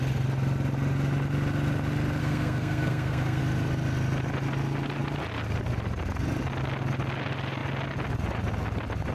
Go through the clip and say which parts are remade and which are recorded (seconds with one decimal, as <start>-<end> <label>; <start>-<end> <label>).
0.0-2.2 recorded; 2.2-3.4 remade; 3.4-9.1 recorded